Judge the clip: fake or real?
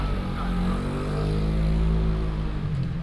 real